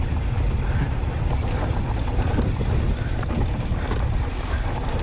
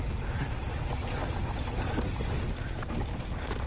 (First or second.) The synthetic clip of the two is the first